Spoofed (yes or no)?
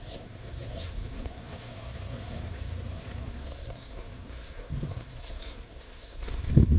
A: yes